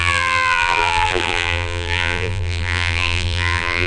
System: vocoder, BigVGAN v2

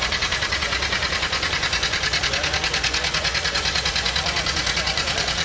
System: vocoder, Vocos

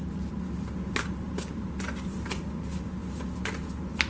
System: none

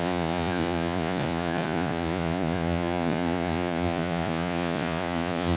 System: vocoder, Vocos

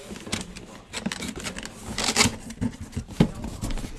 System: none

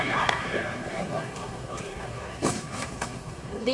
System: codec, SNAC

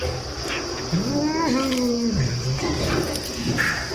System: none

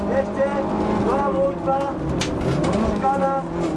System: none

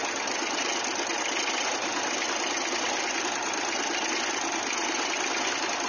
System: none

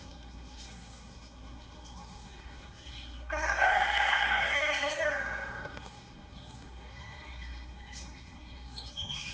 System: codec, SNAC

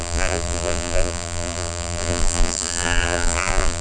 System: vocoder, BigVGAN v2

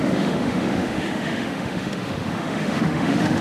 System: autoencoder, DAC-VAE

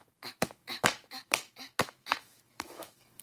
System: autoencoder, DAC-VAE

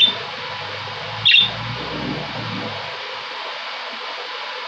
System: none